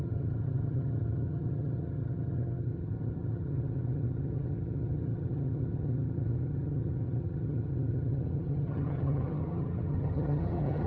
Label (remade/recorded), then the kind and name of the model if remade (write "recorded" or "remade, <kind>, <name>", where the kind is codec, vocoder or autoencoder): remade, vocoder, HiFi-GAN